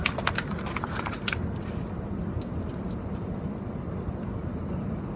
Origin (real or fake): real